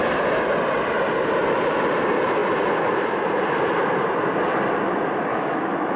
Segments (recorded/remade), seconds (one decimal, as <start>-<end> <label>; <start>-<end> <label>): 0.0-5.3 recorded; 5.3-6.0 remade